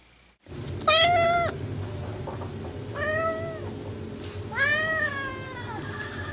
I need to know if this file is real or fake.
real